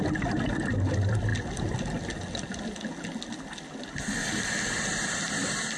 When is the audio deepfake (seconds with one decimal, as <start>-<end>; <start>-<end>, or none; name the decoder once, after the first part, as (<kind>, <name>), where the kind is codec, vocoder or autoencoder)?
none